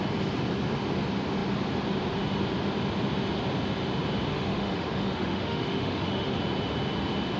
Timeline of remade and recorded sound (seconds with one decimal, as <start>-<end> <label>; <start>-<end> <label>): 0.0-4.3 recorded; 4.3-6.4 remade; 6.4-7.4 recorded